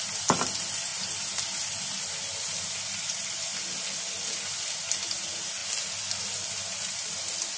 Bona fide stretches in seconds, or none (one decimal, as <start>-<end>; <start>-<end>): 3.5-4.8; 5.6-6.2